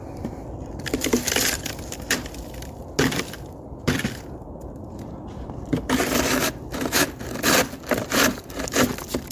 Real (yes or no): yes